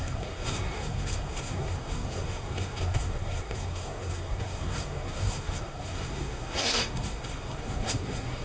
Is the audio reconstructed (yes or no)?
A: yes